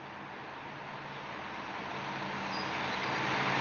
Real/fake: real